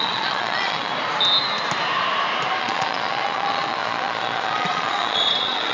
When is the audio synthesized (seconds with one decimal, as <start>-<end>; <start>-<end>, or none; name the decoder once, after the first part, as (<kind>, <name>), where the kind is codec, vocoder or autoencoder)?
0.0-0.9 (vocoder, Vocos); 2.6-5.7